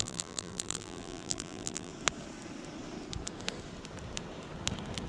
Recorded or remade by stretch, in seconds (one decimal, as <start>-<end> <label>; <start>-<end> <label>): 0.0-1.9 remade; 1.9-5.1 recorded